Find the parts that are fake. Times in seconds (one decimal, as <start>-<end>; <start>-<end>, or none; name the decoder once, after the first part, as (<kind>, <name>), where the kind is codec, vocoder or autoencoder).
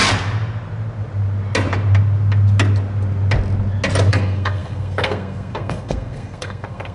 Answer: 4.1-6.9 (codec, SNAC)